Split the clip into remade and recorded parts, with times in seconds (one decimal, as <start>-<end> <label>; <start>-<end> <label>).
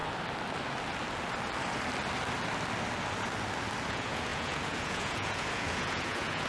0.0-3.9 recorded; 3.9-6.5 remade